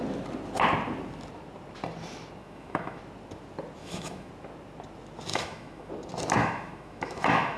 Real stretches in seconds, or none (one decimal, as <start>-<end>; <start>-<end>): 0.0-2.4; 3.0-3.8; 4.3-5.3; 5.9-6.4